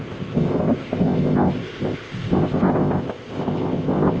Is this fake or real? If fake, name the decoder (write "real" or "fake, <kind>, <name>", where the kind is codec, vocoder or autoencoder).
fake, codec, ZipCodec